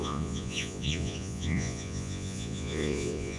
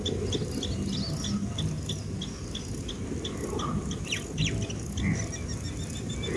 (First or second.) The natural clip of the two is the second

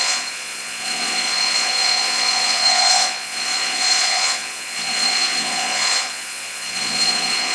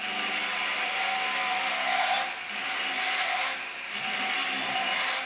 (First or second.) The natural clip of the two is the second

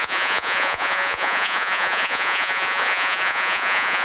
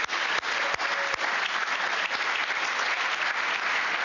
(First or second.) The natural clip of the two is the second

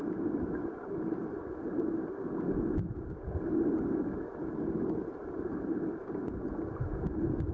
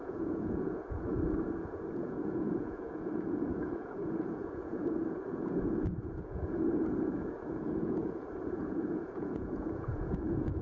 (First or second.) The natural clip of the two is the first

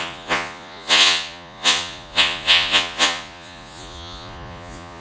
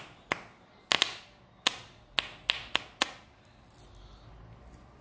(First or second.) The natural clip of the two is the second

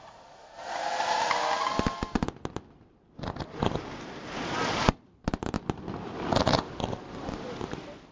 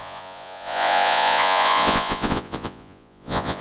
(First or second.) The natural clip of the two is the first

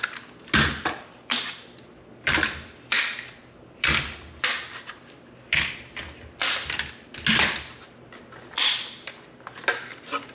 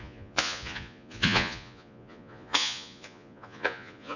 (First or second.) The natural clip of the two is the first